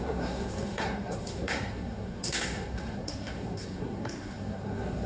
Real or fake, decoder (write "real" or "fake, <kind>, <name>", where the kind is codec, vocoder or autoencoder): fake, codec, SNAC